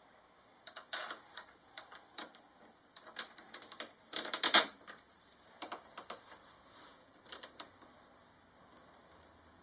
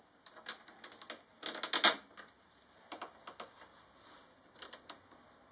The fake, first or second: first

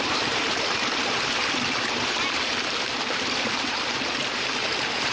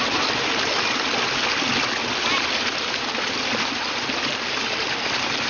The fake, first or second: first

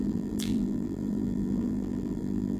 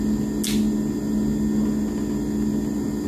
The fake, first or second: first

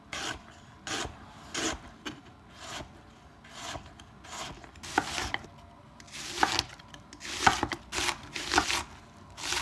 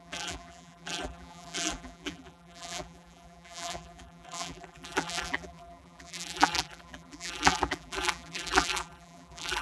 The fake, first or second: second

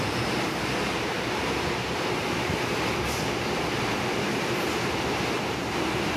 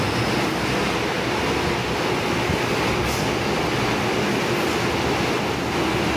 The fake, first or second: first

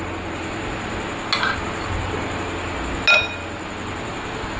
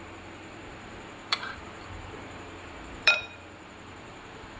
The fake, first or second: second